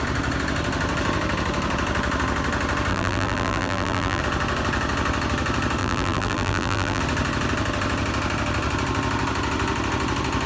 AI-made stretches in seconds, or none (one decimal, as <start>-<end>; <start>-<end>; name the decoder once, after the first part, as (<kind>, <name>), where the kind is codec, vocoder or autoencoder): 2.9-4.2 (vocoder, BigVGAN v2); 5.8-7.0